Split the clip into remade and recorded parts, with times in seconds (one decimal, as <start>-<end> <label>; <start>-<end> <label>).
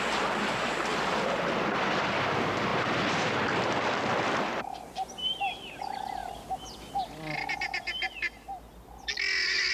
0.0-9.7 recorded